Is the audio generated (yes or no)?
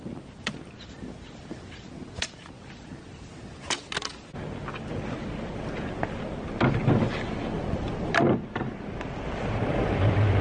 no